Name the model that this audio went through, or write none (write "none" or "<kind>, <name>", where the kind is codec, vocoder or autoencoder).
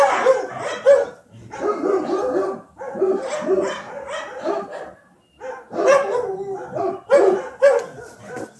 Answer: none